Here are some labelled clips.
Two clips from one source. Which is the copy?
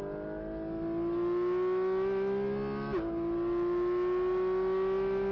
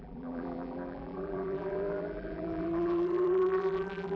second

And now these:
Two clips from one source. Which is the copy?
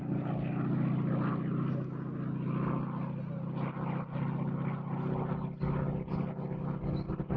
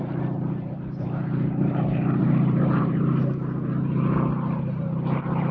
second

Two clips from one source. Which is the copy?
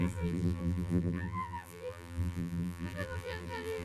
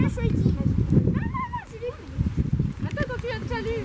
first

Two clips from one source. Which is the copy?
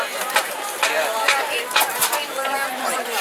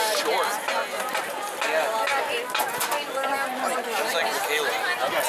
first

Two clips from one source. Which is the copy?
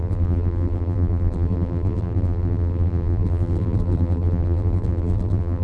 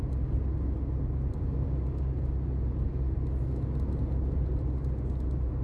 first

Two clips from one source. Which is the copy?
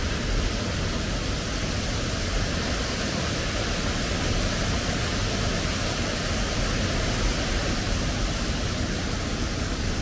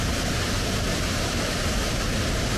second